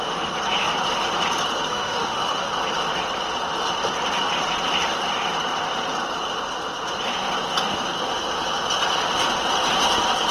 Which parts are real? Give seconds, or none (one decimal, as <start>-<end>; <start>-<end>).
0.0-1.7; 2.5-10.3